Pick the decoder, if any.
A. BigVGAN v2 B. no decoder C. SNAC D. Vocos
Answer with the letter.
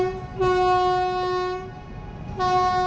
B